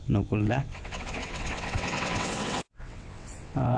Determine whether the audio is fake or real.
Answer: fake